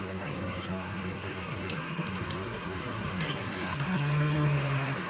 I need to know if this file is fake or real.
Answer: fake